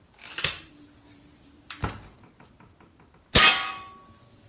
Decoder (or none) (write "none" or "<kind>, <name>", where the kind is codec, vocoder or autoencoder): none